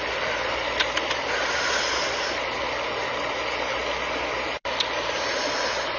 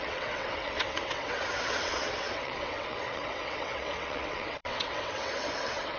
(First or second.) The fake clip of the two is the second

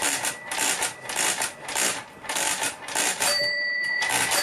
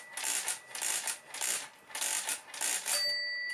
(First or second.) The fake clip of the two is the first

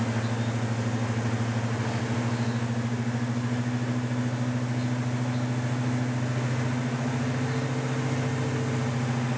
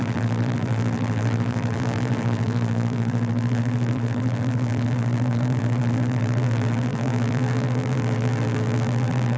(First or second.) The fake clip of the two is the second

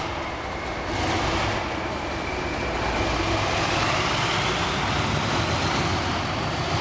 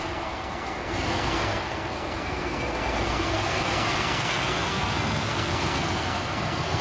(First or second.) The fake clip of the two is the second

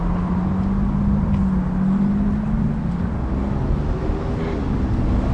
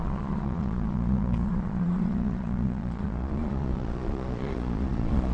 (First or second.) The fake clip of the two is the second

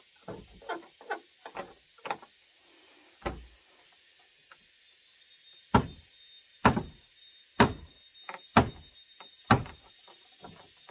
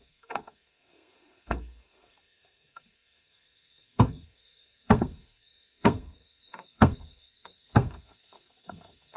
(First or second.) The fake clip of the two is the second